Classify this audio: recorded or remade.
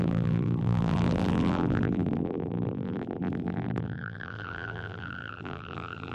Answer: remade